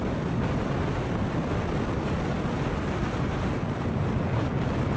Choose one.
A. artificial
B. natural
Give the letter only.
B